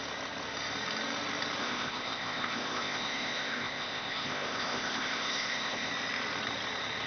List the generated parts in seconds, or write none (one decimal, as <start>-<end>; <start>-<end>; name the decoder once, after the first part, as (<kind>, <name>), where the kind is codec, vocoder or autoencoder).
1.6-5.9 (codec, ZipCodec)

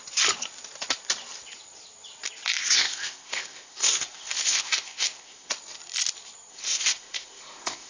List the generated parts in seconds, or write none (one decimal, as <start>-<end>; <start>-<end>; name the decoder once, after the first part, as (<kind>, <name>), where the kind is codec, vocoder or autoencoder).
2.6-5.5 (codec, ZipCodec); 6.5-7.9

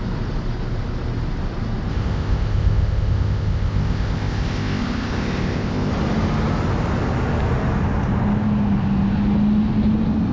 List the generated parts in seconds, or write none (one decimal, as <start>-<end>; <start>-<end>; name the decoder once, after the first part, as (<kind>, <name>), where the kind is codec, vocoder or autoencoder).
1.9-5.9 (codec, ZipCodec)

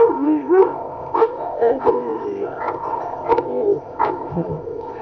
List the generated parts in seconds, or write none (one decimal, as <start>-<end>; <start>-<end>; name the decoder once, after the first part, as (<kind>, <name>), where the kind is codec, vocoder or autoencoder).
0.0-5.0 (codec, ZipCodec)

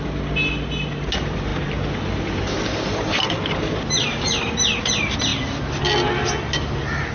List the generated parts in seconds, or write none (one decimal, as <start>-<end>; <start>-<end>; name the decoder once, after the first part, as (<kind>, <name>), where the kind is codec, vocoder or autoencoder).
none

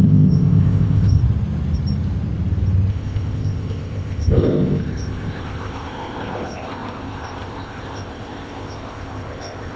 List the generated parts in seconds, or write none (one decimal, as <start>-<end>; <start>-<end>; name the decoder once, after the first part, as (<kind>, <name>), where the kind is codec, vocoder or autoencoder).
0.0-1.2 (codec, ZipCodec); 2.9-9.8

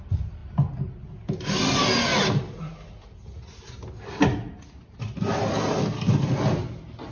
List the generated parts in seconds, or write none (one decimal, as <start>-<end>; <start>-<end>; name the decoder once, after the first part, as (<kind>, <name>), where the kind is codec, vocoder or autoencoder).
none